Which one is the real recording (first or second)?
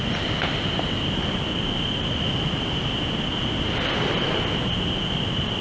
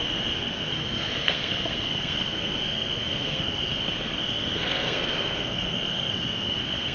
first